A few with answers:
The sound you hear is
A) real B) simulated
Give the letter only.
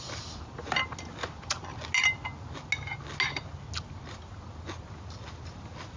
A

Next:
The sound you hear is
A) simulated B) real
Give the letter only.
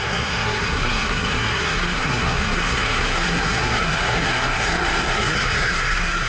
A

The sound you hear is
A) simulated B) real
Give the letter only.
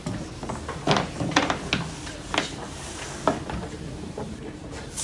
B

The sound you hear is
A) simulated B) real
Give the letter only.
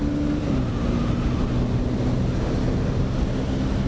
B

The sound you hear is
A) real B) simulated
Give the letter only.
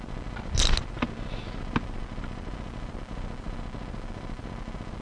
A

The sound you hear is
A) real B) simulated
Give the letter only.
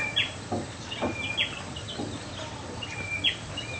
A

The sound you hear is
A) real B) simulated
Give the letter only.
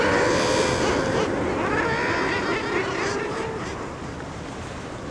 B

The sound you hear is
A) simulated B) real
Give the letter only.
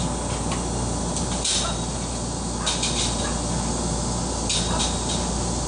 B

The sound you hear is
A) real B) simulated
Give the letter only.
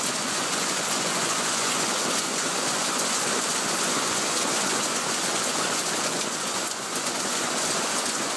B